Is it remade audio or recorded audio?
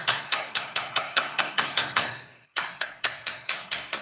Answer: remade